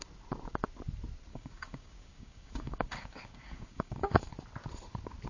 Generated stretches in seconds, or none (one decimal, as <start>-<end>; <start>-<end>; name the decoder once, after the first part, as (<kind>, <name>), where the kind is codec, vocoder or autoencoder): 1.3-4.3 (codec, DAC)